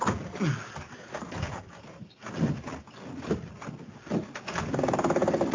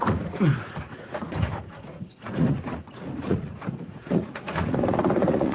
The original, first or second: first